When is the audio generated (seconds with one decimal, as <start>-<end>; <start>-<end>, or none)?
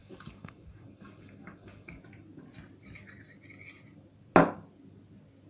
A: 0.0-2.0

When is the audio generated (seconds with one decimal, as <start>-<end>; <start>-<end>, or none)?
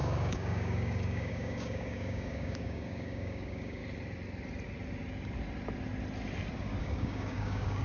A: 0.0-3.8; 6.8-7.8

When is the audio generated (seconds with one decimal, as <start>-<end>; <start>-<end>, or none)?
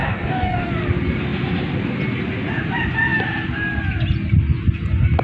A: 0.0-0.7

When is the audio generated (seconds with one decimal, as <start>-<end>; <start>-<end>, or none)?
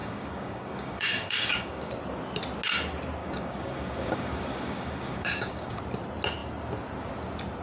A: 0.0-1.9; 3.2-5.8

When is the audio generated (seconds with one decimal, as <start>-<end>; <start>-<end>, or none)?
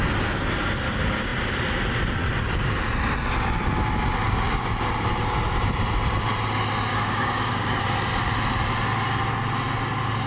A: 6.9-7.8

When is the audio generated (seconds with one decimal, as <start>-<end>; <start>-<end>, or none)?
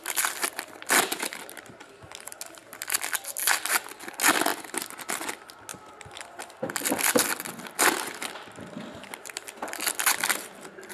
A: none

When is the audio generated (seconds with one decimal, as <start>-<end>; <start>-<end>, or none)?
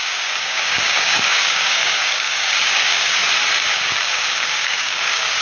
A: 0.0-3.2; 3.7-5.4